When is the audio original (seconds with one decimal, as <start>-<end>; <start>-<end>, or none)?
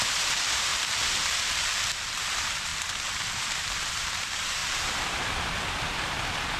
0.7-2.2